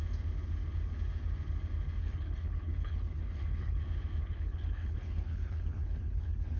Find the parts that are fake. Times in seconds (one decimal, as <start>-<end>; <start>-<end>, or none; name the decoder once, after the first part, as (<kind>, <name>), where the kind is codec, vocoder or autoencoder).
2.0-3.8 (codec, HILCodec); 4.2-6.6